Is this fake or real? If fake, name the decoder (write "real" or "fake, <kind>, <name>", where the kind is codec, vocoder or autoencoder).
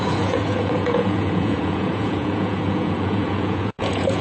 fake, vocoder, Vocos